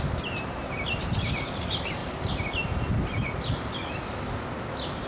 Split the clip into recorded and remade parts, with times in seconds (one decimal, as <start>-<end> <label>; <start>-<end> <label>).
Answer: 0.0-2.0 remade; 2.0-5.1 recorded